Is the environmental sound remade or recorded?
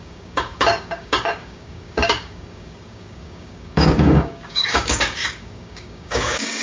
remade